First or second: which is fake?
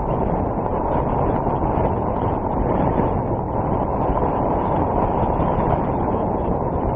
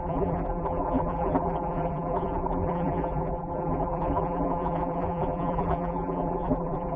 second